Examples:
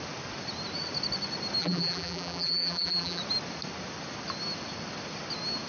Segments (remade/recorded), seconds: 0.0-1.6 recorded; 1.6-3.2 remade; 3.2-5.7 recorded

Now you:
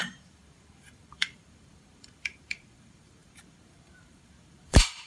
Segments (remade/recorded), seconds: 0.0-5.1 remade

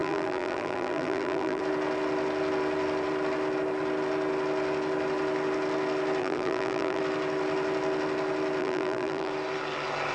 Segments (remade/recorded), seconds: 0.0-1.6 remade; 1.6-6.2 recorded; 6.2-7.0 remade; 7.0-8.6 recorded; 8.6-9.3 remade; 9.3-10.1 recorded

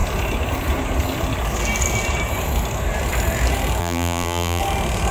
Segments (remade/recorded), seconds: 0.0-3.8 recorded; 3.8-4.6 remade; 4.6-5.1 recorded

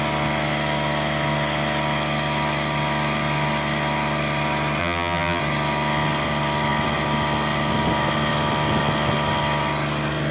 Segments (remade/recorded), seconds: 0.0-4.8 recorded; 4.8-5.4 remade; 5.4-10.3 recorded

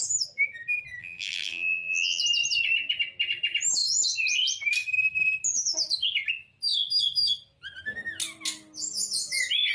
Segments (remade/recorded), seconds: 0.0-1.0 recorded; 1.0-2.2 remade; 2.2-9.7 recorded

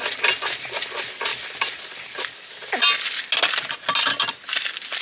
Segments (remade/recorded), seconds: 0.0-5.0 recorded